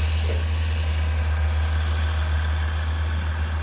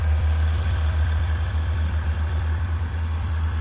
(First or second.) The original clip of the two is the first